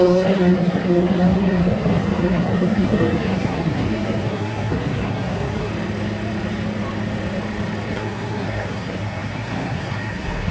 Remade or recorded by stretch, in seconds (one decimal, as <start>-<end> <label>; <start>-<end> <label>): 0.0-5.7 remade; 5.7-7.9 recorded; 7.9-10.5 remade